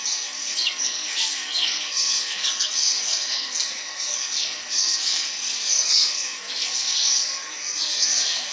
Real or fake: fake